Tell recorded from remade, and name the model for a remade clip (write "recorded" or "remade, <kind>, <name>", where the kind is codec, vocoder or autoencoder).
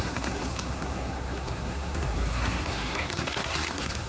remade, codec, SNAC